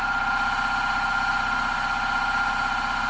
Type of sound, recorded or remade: recorded